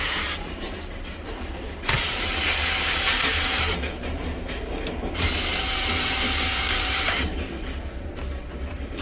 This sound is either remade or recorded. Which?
remade